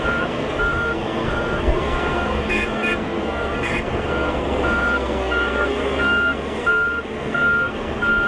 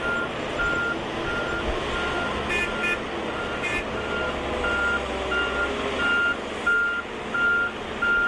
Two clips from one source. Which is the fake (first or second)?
first